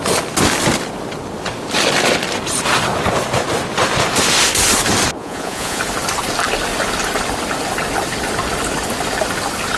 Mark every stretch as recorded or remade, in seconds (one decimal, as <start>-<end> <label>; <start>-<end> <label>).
0.0-5.2 recorded; 5.2-5.8 remade; 5.8-9.8 recorded

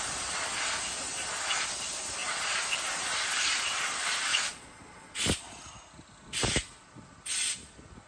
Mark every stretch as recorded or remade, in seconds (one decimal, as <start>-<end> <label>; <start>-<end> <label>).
0.0-4.3 recorded; 4.3-5.2 remade; 5.2-8.1 recorded

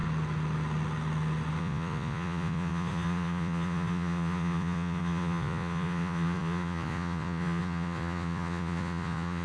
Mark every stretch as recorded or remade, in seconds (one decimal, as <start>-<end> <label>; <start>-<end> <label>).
0.0-1.6 recorded; 1.6-9.4 remade

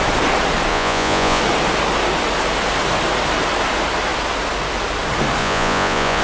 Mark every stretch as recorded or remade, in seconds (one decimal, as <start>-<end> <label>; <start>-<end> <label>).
0.0-0.7 recorded; 0.7-1.4 remade; 1.4-5.4 recorded; 5.4-6.2 remade

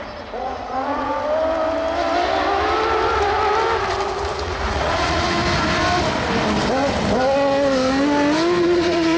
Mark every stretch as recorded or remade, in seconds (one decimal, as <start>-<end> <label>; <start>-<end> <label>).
0.0-1.1 remade; 1.1-4.3 recorded; 4.3-5.4 remade; 5.4-8.6 recorded; 8.6-9.2 remade

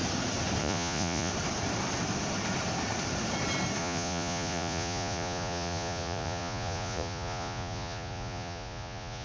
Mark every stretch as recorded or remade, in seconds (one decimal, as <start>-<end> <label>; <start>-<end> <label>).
0.0-0.6 recorded; 0.6-1.3 remade; 1.3-3.8 recorded; 3.8-9.2 remade

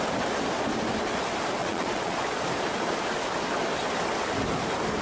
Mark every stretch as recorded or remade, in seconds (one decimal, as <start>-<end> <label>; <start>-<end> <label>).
0.0-1.6 recorded; 1.6-2.4 remade; 2.4-5.0 recorded